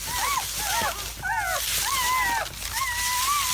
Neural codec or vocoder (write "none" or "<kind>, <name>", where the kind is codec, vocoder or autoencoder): none